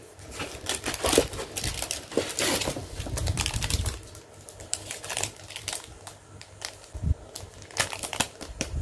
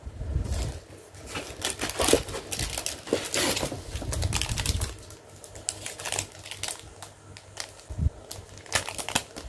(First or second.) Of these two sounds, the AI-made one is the first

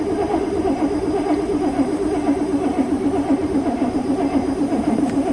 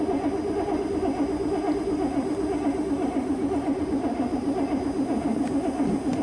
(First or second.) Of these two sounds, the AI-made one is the first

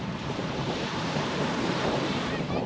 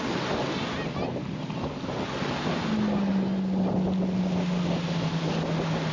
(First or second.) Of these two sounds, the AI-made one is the first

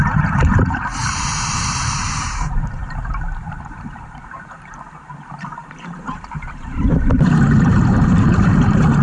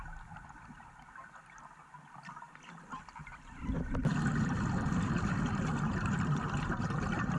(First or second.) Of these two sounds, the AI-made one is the first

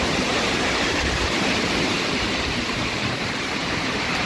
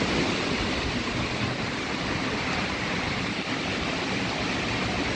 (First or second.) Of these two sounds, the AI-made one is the first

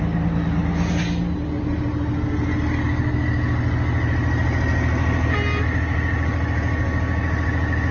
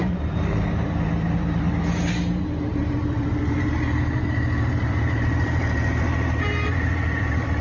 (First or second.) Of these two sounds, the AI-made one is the second